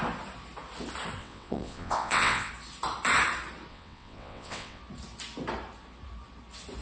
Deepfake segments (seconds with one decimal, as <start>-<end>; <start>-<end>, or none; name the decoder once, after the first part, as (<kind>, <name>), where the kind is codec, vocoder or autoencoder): 1.2-2.5 (vocoder, WaveNeXt); 3.7-4.8